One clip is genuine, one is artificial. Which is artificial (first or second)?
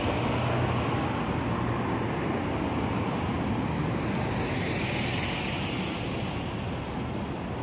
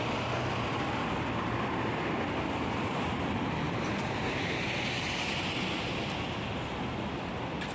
second